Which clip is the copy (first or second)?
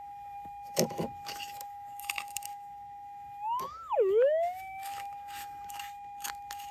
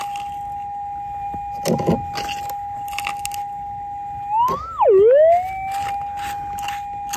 first